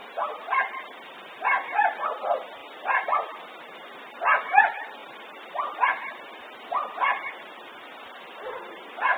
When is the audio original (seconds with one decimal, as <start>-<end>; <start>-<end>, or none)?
1.1-2.6; 4.1-5.0; 6.7-9.2